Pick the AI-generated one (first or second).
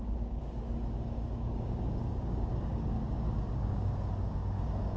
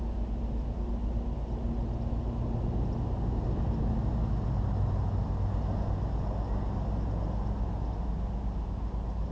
first